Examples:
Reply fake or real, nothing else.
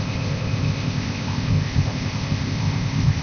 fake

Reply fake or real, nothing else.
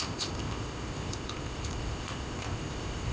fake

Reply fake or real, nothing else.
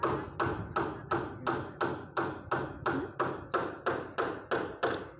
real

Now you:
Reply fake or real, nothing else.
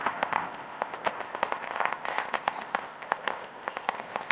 fake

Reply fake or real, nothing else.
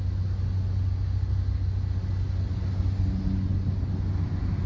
real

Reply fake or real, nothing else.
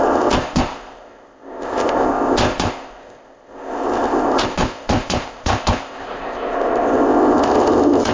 fake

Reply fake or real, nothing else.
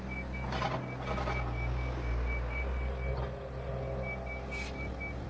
real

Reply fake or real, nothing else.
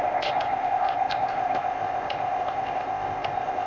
fake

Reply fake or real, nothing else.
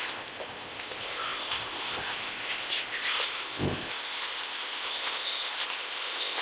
fake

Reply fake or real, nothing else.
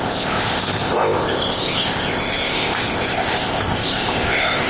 fake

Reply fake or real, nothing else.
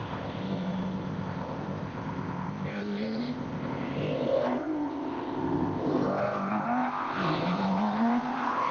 fake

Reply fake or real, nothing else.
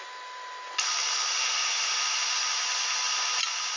real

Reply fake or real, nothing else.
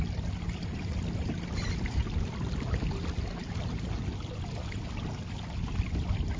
real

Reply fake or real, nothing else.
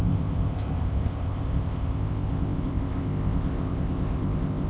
fake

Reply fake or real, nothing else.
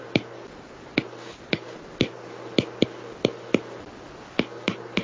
real